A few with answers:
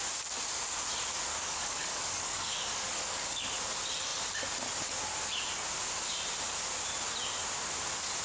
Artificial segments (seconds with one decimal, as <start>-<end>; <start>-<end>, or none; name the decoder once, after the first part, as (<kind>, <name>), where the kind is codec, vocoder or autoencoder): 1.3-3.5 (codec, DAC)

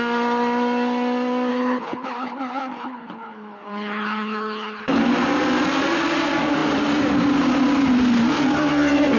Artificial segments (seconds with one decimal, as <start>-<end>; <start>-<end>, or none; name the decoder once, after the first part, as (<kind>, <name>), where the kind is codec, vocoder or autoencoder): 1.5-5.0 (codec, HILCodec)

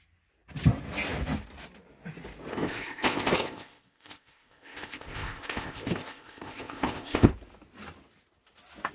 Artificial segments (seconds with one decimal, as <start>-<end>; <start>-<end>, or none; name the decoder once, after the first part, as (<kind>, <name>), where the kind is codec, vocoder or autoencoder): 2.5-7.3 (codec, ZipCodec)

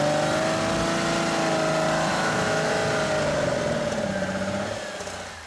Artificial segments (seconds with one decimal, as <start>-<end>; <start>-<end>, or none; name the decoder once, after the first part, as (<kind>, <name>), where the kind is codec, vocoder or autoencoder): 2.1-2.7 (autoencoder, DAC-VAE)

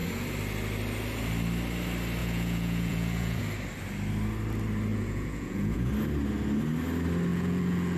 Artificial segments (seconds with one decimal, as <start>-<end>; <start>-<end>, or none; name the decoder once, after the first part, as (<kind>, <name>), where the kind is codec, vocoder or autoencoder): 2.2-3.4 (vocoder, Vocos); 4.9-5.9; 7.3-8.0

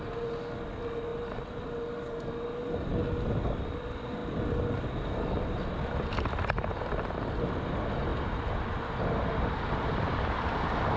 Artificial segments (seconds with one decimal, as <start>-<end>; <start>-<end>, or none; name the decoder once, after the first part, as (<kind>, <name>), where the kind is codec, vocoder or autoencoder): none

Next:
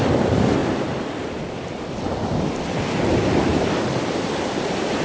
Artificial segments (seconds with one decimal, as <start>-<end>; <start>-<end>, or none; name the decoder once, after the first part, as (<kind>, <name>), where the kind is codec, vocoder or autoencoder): 3.5-5.0 (vocoder, BigVGAN v2)

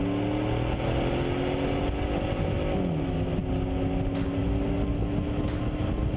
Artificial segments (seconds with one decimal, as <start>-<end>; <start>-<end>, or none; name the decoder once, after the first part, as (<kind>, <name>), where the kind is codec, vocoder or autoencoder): none